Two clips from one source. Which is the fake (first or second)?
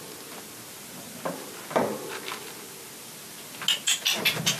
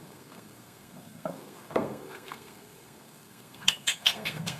second